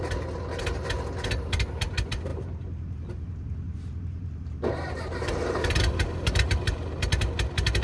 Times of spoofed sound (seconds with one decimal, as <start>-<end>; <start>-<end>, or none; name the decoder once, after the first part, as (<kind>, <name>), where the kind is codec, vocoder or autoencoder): 2.3-7.0 (vocoder, BigVGAN v2)